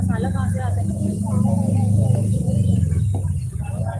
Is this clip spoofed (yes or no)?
no